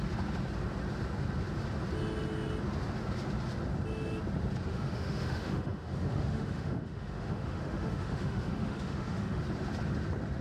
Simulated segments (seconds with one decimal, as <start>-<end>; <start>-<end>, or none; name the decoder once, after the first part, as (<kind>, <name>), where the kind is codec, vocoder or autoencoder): 4.7-9.4 (autoencoder, DAC-VAE)